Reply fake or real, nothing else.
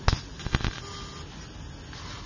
real